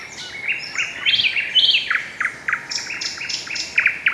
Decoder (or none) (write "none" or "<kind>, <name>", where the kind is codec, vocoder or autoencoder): none